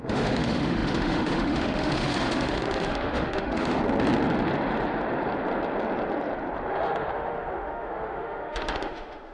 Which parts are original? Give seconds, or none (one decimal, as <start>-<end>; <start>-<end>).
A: 3.8-6.7